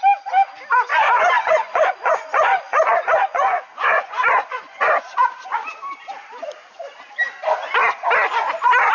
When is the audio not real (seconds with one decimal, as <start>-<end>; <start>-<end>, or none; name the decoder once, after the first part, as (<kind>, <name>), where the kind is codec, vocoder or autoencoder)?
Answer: 0.9-4.9 (vocoder, Vocos)